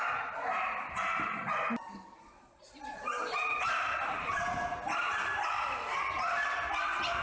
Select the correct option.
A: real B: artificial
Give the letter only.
A